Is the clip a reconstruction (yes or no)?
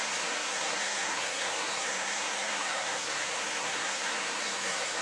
yes